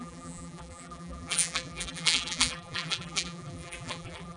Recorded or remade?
remade